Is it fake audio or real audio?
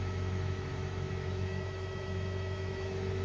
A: fake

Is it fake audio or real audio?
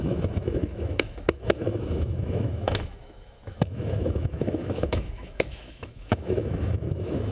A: fake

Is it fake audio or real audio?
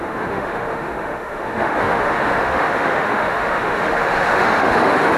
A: fake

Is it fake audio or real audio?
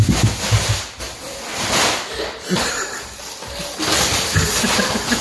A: real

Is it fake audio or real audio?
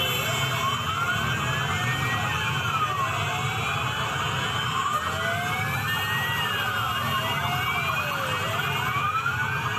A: real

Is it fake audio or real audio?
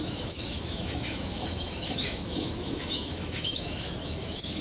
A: fake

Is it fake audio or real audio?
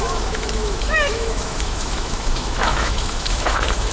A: fake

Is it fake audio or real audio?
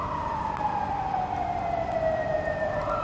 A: real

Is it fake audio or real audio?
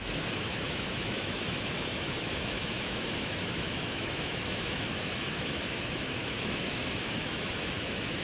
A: fake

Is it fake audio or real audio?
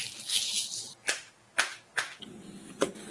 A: real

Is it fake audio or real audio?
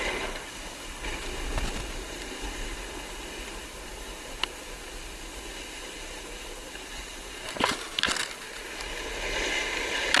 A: real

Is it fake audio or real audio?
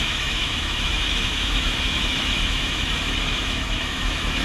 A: fake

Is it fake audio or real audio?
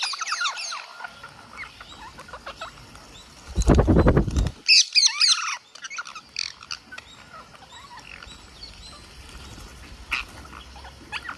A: real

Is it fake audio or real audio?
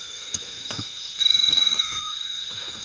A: fake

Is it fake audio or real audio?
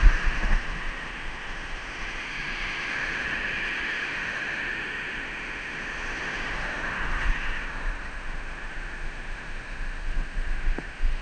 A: fake